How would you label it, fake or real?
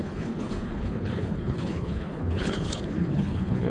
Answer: fake